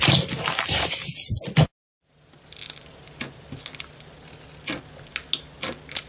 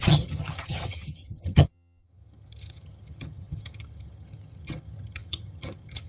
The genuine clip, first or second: first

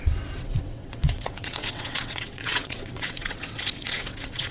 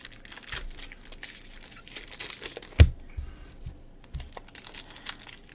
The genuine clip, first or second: second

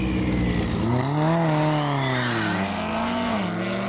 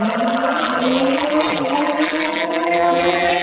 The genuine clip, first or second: first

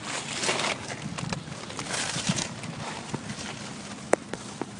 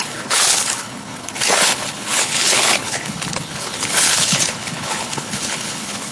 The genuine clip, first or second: first